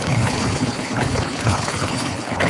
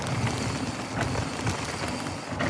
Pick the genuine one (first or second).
second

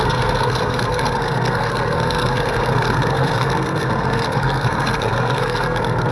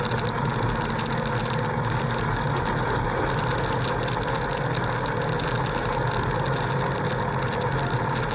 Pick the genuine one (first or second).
second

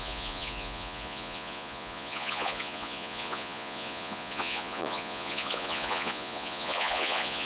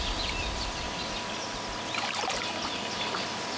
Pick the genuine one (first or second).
second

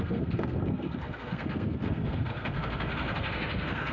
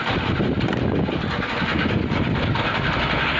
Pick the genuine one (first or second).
second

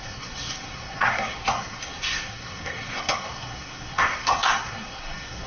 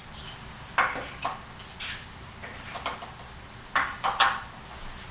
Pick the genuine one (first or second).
second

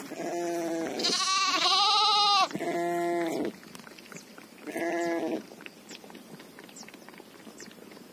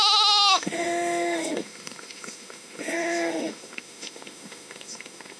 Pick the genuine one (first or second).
first